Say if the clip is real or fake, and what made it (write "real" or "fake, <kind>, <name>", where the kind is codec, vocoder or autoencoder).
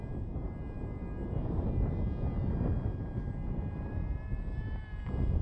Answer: real